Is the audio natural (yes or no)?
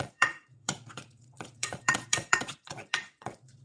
no